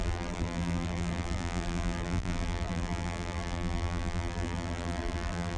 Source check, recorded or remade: remade